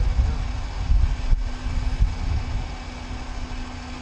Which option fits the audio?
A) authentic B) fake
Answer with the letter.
A